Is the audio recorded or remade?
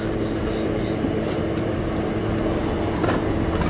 recorded